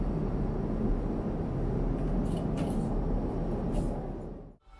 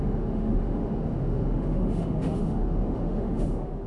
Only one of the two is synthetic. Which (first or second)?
second